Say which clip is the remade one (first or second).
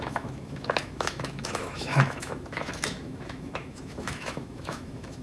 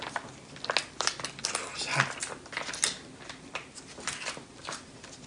first